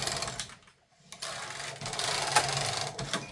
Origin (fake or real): real